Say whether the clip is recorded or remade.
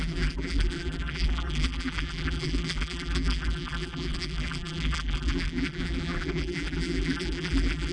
remade